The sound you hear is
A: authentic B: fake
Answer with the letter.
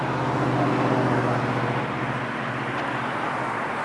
A